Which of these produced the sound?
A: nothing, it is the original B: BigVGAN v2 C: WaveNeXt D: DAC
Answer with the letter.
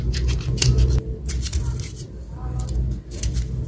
A